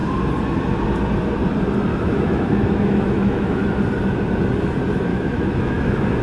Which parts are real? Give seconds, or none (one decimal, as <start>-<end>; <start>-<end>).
0.0-1.9; 3.7-5.1